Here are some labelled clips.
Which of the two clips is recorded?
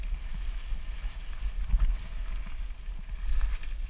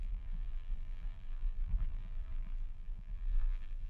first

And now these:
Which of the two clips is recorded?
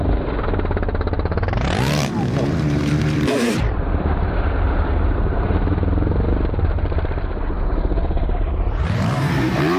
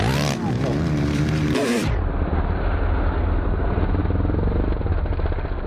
second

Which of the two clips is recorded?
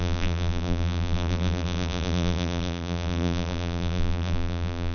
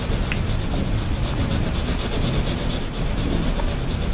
second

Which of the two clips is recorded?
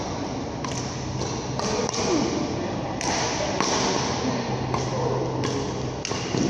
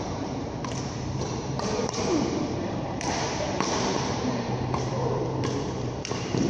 first